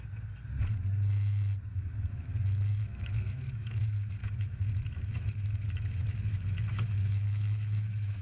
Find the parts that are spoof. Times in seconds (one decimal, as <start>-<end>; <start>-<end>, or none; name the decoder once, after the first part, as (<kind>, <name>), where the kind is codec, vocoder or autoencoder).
1.7-3.8 (autoencoder, DAC-VAE); 4.2-8.2